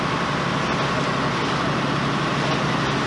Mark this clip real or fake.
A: real